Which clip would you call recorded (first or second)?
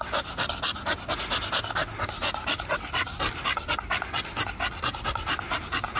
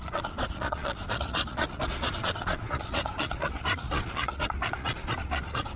first